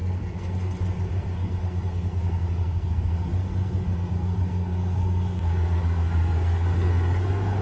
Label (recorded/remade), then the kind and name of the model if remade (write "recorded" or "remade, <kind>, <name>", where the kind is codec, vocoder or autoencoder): remade, codec, SNAC